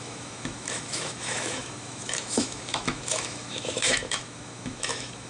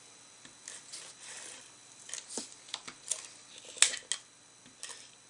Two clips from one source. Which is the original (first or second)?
second